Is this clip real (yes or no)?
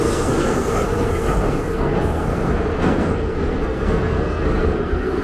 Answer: no